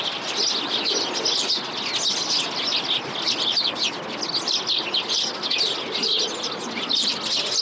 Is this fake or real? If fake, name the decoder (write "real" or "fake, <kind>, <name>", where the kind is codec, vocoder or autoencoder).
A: real